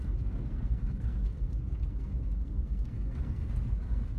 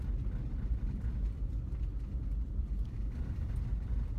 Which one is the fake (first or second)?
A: first